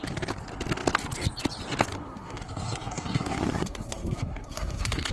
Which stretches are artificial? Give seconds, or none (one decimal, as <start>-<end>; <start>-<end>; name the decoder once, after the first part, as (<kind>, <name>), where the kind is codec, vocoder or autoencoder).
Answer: 1.9-5.1 (codec, SNAC)